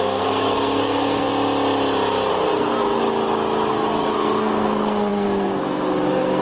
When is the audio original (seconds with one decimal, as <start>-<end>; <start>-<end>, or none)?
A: 1.3-2.3; 3.0-3.7